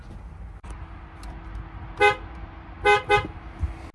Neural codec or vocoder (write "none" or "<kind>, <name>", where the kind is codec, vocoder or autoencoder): none